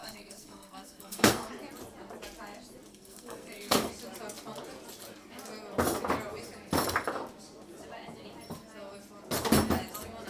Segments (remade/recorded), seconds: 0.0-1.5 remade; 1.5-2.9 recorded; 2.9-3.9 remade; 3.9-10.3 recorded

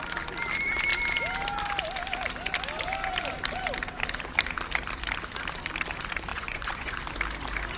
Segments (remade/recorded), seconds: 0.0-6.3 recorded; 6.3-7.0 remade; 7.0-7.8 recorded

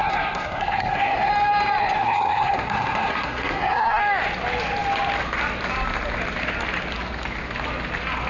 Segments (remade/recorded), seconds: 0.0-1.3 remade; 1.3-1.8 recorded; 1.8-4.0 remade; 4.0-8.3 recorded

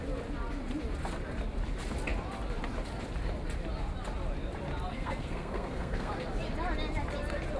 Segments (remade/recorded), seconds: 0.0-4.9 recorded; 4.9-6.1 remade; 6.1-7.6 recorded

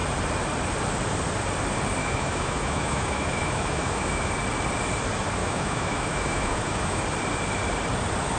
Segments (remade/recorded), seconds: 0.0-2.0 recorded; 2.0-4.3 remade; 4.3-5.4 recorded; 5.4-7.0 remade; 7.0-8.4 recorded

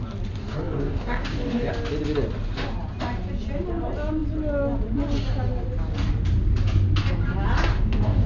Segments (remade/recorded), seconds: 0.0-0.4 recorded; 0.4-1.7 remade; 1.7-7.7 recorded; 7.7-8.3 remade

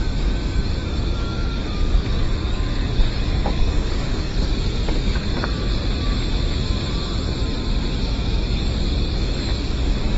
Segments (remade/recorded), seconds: 0.0-5.7 remade; 5.7-8.1 recorded; 8.1-10.2 remade